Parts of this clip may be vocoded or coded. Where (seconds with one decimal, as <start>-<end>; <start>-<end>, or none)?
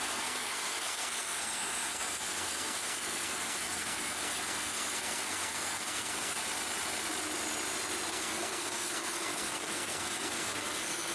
0.0-6.4; 8.1-11.1